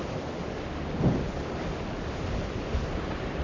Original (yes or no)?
yes